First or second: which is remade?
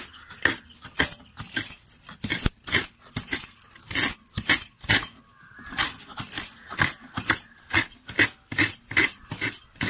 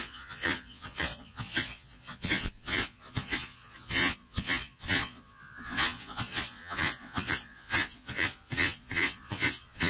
second